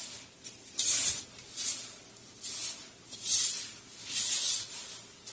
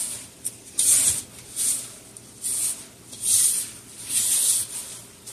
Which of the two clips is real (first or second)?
first